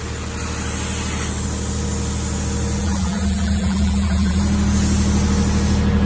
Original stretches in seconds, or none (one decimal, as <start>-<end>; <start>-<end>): 0.0-2.8; 4.4-6.1